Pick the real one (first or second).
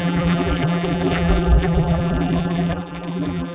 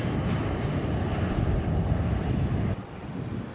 second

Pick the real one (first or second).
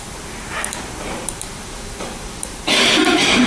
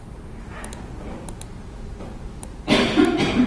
second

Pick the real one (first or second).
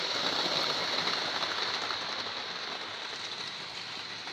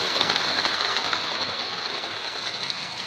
first